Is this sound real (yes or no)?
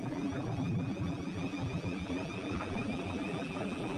no